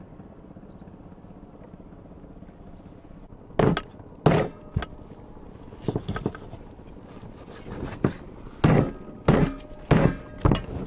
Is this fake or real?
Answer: real